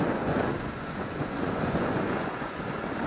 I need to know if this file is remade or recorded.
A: remade